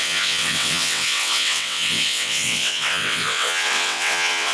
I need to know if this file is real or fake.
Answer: fake